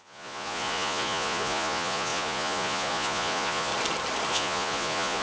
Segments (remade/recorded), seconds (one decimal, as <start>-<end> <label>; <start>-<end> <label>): 0.0-3.7 remade; 3.7-4.3 recorded; 4.3-5.2 remade